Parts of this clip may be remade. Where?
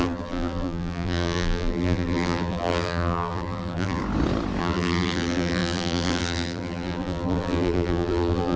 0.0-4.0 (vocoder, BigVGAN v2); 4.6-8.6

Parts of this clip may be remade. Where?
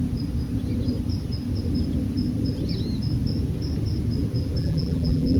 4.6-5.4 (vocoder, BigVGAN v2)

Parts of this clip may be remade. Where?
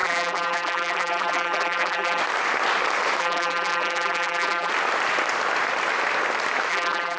0.0-2.2 (vocoder, BigVGAN v2); 3.2-4.7; 6.7-7.2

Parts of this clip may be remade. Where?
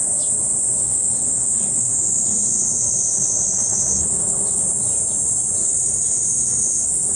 0.8-4.6 (codec, HILCodec); 5.6-7.2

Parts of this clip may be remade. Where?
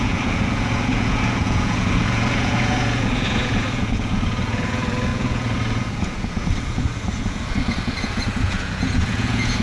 0.0-9.6 (vocoder, Vocos)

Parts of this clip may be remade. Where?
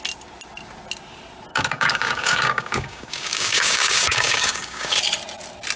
1.5-5.0 (codec, DAC)